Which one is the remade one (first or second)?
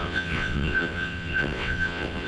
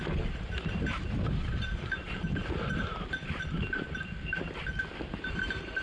first